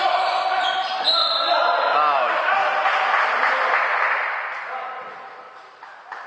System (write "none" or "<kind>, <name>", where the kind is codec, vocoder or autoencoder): none